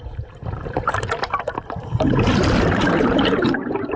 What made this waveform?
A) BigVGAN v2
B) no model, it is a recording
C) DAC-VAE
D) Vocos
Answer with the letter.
A